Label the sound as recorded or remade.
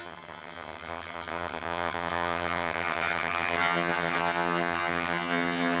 remade